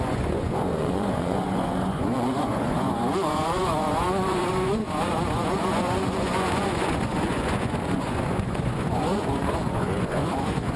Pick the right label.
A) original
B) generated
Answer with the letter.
B